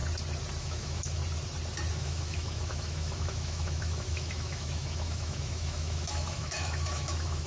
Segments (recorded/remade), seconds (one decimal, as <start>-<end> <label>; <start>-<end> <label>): 0.0-0.6 recorded; 0.6-1.2 remade; 1.2-1.9 recorded; 1.9-7.5 remade

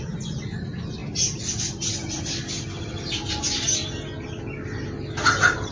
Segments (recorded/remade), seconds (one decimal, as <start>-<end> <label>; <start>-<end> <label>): 0.0-5.7 recorded

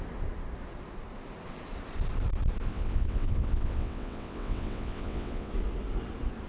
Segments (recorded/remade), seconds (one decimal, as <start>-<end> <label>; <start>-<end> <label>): 0.0-2.7 recorded; 2.7-5.5 remade; 5.5-6.5 recorded

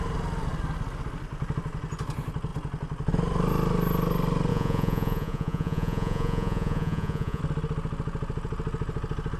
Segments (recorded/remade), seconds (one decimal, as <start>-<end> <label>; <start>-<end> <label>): 0.0-4.5 recorded; 4.5-7.4 remade; 7.4-9.4 recorded

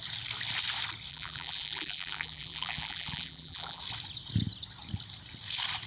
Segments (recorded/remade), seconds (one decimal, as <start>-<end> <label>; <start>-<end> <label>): 0.0-1.1 recorded; 1.1-3.8 remade; 3.8-5.9 recorded

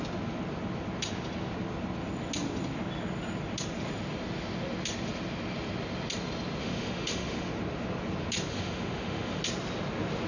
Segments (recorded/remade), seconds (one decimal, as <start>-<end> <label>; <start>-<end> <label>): 0.0-6.6 recorded; 6.6-7.5 remade; 7.5-8.5 recorded; 8.5-9.4 remade; 9.4-10.3 recorded

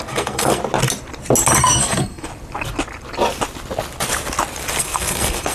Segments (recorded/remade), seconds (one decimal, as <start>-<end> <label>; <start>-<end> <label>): 0.0-0.6 remade; 0.6-1.6 recorded; 1.6-2.3 remade; 2.3-4.8 recorded; 4.8-5.5 remade

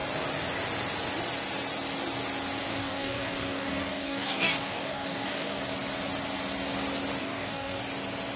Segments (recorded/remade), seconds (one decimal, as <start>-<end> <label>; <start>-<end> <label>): 0.0-2.7 recorded; 2.7-5.6 remade; 5.6-7.2 recorded; 7.2-7.8 remade; 7.8-8.4 recorded